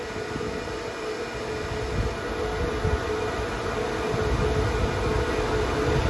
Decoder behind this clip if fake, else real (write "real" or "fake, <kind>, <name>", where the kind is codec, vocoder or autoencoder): real